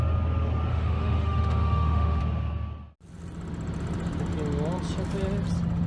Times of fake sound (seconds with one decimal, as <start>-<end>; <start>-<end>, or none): 0.7-2.2